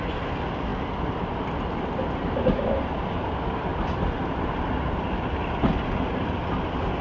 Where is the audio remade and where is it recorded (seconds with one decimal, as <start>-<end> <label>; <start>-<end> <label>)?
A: 0.0-7.0 recorded